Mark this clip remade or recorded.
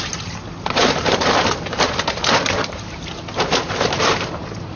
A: remade